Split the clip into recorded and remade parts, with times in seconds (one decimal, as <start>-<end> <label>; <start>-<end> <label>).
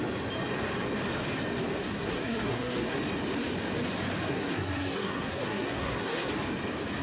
0.0-1.9 recorded; 1.9-3.0 remade; 3.0-4.3 recorded; 4.3-6.3 remade; 6.3-7.0 recorded